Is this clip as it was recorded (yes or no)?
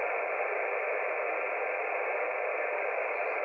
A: yes